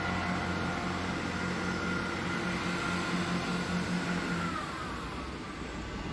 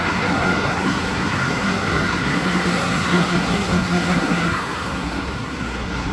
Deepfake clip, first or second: second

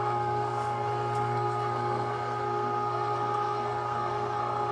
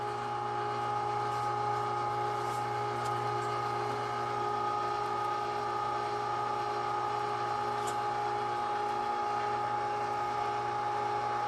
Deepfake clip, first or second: first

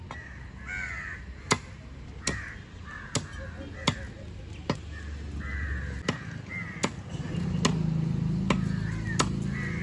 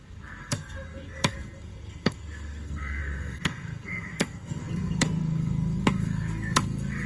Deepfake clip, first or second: second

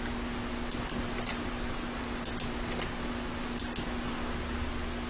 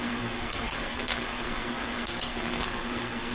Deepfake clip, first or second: second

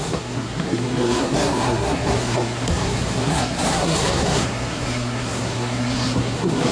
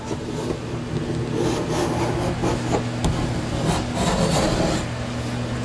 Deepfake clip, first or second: first